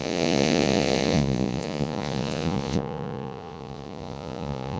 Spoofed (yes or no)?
yes